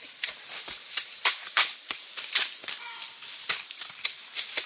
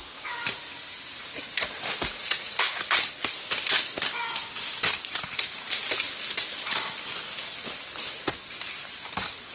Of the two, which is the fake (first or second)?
first